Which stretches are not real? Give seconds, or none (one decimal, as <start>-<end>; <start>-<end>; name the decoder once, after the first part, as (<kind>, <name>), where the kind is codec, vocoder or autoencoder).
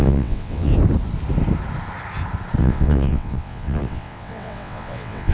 0.0-0.7 (vocoder, WaveNeXt); 2.6-5.3